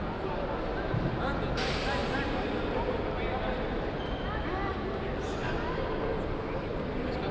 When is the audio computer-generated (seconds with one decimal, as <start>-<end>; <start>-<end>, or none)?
none